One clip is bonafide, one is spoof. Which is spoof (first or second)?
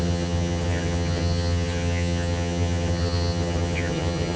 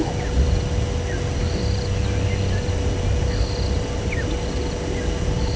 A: first